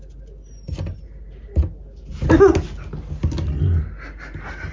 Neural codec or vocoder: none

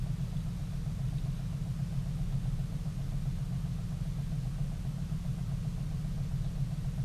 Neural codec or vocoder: none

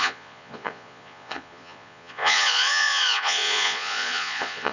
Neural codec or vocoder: vocoder, Vocos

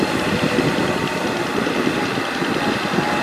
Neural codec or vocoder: none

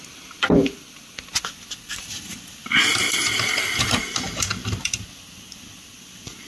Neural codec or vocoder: none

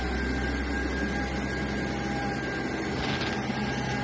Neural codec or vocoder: none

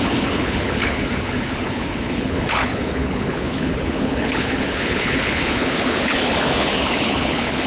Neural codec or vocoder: codec, HILCodec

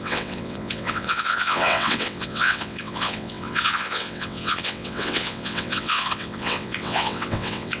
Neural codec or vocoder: vocoder, WaveNeXt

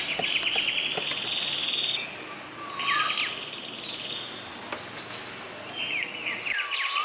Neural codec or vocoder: none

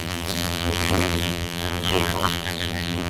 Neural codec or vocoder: vocoder, BigVGAN v2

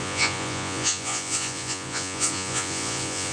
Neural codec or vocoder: vocoder, Vocos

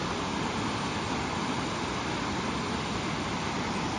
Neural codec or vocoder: vocoder, BigVGAN v2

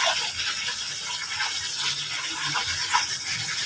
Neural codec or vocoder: none